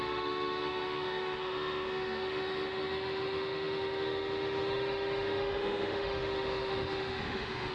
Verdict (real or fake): fake